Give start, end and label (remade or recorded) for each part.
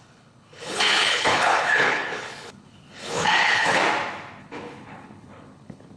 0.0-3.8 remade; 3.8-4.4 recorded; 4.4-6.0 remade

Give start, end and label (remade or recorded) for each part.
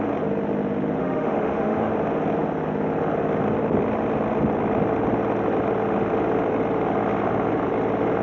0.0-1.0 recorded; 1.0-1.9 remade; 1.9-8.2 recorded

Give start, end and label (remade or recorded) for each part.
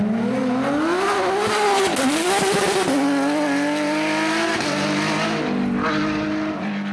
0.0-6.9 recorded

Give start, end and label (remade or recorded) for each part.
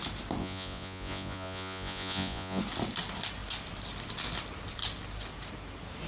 0.0-0.4 recorded; 0.4-2.6 remade; 2.6-6.1 recorded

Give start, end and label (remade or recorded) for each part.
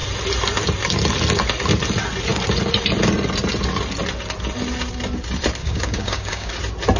0.0-5.6 recorded; 5.6-6.5 remade; 6.5-7.0 recorded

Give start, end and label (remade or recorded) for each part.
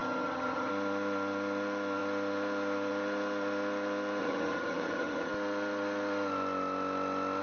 0.0-0.7 remade; 0.7-4.2 recorded; 4.2-5.3 remade; 5.3-7.4 recorded